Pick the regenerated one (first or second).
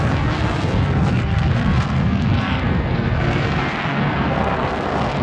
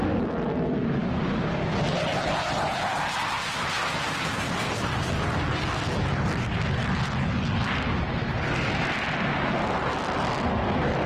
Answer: first